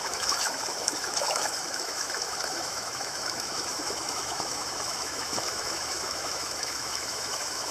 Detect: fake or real fake